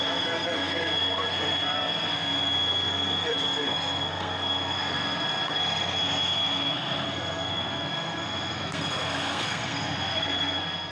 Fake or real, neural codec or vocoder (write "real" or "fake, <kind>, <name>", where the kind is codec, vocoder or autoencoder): fake, codec, SNAC